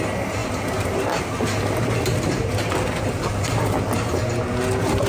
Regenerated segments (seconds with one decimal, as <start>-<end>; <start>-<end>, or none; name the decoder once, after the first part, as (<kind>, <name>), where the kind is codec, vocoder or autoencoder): none